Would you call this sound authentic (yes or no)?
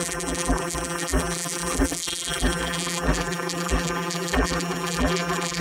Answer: no